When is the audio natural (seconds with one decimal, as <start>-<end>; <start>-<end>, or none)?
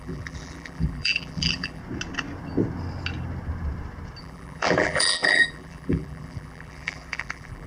1.8-4.2